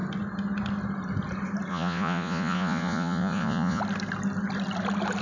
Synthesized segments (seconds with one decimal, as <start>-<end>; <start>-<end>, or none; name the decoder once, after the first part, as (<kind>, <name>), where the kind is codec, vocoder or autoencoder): 1.7-3.8 (vocoder, Vocos)